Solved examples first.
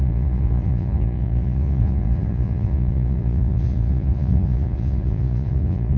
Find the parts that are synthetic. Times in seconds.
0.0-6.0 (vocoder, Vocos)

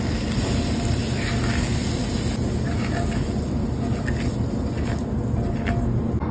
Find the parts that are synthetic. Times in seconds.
none

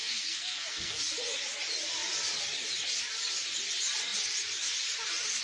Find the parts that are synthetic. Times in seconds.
0.0-1.0 (codec, SNAC)

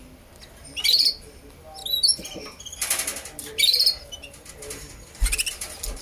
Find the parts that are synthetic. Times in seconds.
none

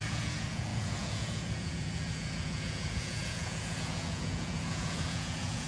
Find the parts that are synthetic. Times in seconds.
0.0-5.7 (vocoder, Vocos)